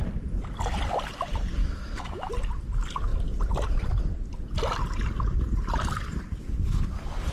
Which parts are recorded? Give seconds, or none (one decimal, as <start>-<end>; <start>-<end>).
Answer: 0.0-1.6; 2.3-7.3